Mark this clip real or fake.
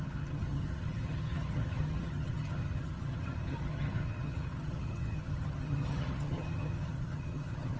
fake